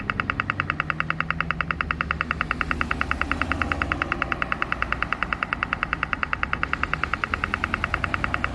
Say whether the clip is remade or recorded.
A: recorded